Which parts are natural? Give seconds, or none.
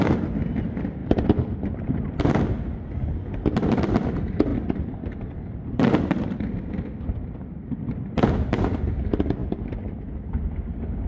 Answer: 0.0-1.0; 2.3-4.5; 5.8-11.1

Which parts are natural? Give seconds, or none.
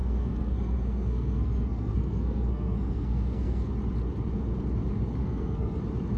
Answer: 3.7-5.2; 5.8-6.2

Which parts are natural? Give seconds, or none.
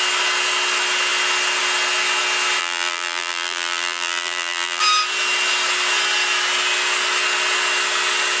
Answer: 0.0-2.6; 4.8-8.4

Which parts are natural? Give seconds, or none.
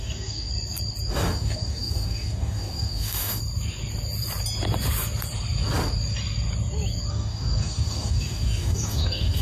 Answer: 0.5-1.1; 3.4-7.1